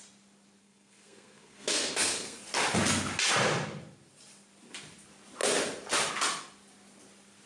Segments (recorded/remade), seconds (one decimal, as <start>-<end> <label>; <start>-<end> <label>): 0.0-0.6 recorded; 0.6-2.4 remade; 2.4-7.5 recorded